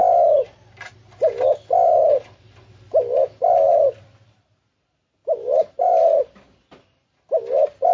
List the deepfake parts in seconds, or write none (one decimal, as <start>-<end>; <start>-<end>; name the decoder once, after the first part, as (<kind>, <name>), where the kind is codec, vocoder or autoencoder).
5.2-6.2 (vocoder, BigVGAN v2)